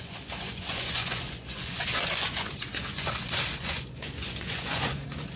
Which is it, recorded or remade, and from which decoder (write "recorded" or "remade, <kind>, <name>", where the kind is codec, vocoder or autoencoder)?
remade, vocoder, Vocos